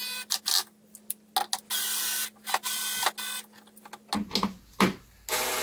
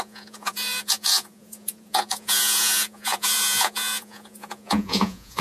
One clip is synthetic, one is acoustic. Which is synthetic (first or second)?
second